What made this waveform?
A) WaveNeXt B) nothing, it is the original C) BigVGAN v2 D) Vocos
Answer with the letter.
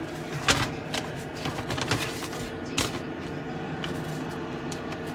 B